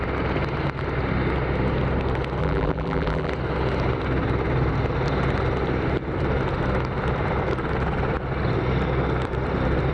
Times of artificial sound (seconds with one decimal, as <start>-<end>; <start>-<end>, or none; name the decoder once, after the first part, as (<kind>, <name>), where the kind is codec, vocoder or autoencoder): 2.4-3.3 (vocoder, BigVGAN v2)